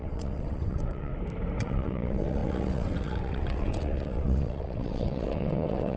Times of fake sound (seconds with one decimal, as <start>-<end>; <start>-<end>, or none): 0.0-1.1; 1.6-6.0